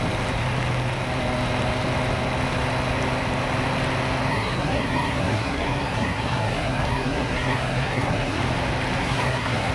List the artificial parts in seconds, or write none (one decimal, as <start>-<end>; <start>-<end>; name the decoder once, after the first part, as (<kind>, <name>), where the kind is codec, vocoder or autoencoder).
4.3-8.4 (codec, SNAC); 9.0-9.7